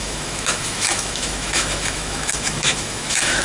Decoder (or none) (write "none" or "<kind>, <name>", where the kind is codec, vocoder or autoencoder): autoencoder, DAC-VAE